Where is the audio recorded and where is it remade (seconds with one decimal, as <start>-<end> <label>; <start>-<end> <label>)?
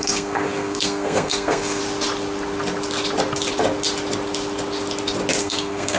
0.0-1.8 remade; 1.8-5.4 recorded; 5.4-6.0 remade